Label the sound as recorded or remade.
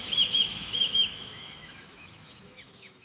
remade